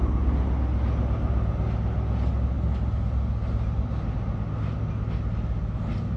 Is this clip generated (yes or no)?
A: no